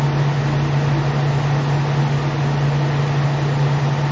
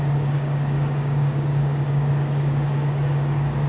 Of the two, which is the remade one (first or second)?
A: second